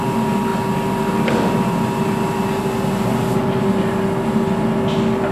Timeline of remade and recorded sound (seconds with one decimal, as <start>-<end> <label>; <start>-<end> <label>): 0.0-5.3 recorded

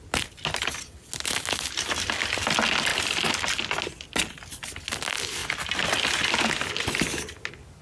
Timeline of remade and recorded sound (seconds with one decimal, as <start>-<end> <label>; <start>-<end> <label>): 0.0-2.9 recorded; 2.9-3.5 remade; 3.5-7.8 recorded

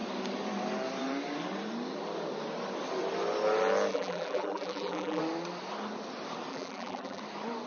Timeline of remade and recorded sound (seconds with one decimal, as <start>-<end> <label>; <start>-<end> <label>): 0.0-3.9 recorded; 3.9-5.2 remade; 5.2-6.5 recorded; 6.5-7.2 remade; 7.2-7.7 recorded

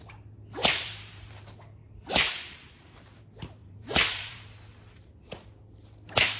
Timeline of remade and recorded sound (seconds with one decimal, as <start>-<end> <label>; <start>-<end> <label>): 0.0-0.6 recorded; 0.6-1.4 remade; 1.4-1.8 recorded; 1.8-3.2 remade; 3.2-3.6 recorded; 3.6-4.4 remade; 4.4-6.4 recorded

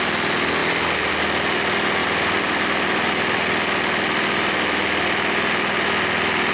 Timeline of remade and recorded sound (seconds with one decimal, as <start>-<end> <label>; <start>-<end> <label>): 0.0-0.6 recorded; 0.6-1.1 remade; 1.1-2.0 recorded; 2.0-2.6 remade; 2.6-6.5 recorded

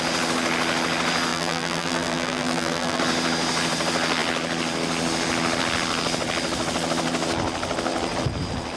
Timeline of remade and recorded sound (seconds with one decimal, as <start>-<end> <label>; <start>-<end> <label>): 0.0-1.3 recorded; 1.3-3.0 remade; 3.0-8.8 recorded

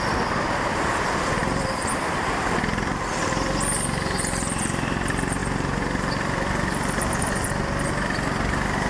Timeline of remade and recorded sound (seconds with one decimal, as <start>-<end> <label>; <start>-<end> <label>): 0.0-1.4 recorded; 1.4-4.7 remade; 4.7-5.4 recorded; 5.4-7.5 remade; 7.5-8.9 recorded